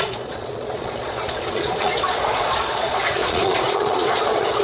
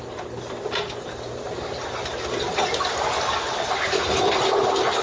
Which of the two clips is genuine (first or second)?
second